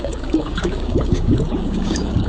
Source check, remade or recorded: remade